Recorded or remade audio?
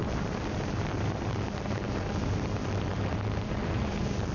remade